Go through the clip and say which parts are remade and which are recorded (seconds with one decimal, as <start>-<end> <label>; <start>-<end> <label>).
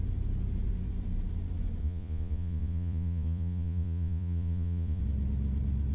0.0-1.8 recorded; 1.8-5.0 remade; 5.0-5.9 recorded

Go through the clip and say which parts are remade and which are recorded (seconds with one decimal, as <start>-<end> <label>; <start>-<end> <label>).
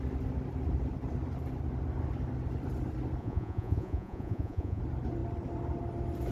0.0-3.2 recorded; 3.2-4.8 remade; 4.8-6.3 recorded